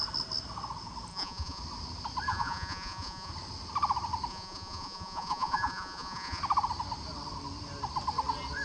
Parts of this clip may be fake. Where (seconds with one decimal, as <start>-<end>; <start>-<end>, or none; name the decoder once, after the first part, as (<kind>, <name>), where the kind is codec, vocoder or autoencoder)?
1.1-1.6 (vocoder, Vocos); 2.3-3.3; 4.3-6.4